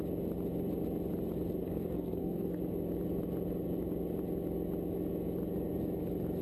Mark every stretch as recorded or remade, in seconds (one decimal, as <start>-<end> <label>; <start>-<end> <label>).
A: 0.0-1.6 recorded; 1.6-2.6 remade; 2.6-6.4 recorded